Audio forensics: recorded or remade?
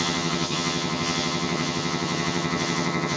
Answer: remade